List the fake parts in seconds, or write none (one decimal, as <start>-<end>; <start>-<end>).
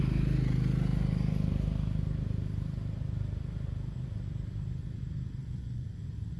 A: 5.4-6.4